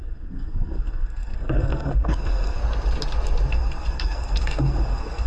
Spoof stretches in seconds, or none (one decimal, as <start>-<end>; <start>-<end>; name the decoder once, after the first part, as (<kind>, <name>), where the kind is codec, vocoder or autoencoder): 0.0-2.6 (codec, SNAC); 3.5-5.3